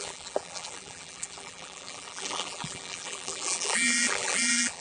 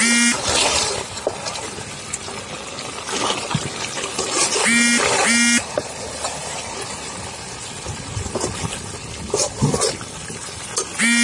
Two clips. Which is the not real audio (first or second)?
first